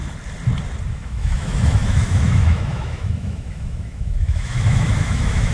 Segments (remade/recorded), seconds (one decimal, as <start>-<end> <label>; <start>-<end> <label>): 0.0-0.9 recorded; 0.9-5.5 remade